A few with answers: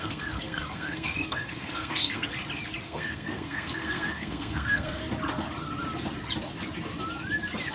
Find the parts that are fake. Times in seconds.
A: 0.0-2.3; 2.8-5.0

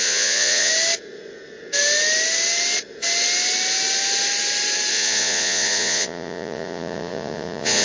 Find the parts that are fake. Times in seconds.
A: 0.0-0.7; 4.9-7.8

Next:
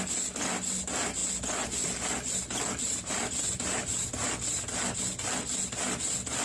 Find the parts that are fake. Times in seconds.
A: none

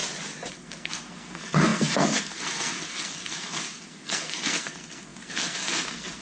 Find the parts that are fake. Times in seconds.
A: 0.5-6.2

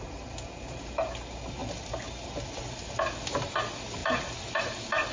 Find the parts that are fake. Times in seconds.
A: none

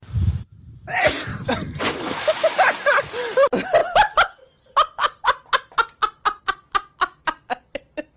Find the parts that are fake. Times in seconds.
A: 1.3-1.9

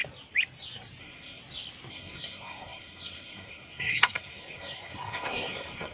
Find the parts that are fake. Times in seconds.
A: 1.0-1.4; 1.9-5.9